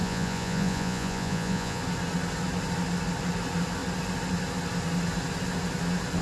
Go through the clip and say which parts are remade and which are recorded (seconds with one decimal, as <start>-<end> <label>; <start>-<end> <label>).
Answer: 0.0-1.8 remade; 1.8-6.2 recorded